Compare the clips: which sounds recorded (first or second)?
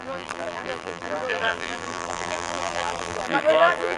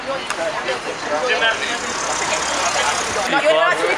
second